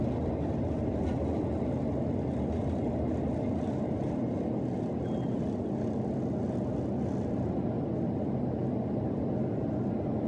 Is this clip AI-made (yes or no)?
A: no